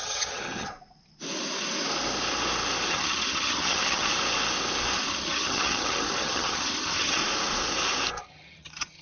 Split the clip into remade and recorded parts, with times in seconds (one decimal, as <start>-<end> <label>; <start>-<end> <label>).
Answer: 0.0-0.7 remade; 0.7-2.9 recorded; 2.9-4.1 remade; 4.1-5.1 recorded; 5.1-7.2 remade; 7.2-8.2 recorded; 8.2-9.0 remade